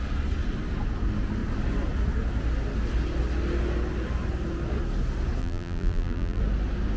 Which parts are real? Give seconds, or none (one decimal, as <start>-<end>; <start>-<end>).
0.0-5.4; 6.4-7.0